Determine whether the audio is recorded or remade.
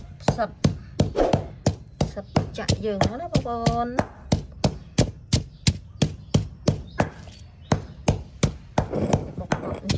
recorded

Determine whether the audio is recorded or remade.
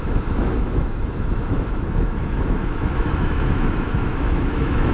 remade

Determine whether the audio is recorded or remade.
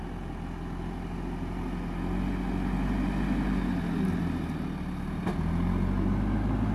recorded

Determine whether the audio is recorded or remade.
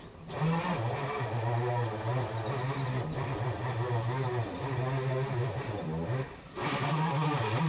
recorded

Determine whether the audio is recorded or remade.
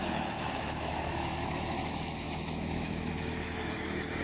remade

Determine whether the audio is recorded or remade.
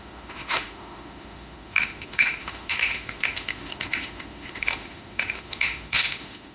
remade